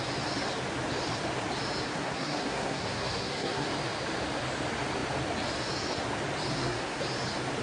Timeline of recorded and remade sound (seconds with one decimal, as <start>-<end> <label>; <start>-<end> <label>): 0.0-1.9 recorded; 1.9-3.7 remade; 3.7-6.5 recorded; 6.5-7.0 remade; 7.0-7.6 recorded